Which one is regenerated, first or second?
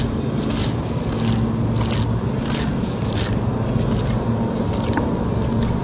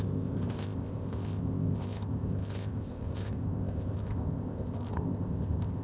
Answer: second